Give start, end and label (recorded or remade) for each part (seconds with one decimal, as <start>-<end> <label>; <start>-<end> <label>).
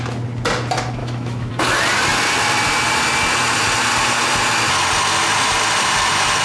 0.0-1.0 recorded; 1.0-1.5 remade; 1.5-6.4 recorded